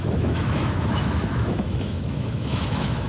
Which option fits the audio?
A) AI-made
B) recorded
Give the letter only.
A